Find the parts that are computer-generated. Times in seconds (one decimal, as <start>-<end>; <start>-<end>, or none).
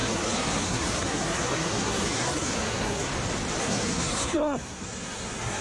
0.0-3.1; 3.6-5.6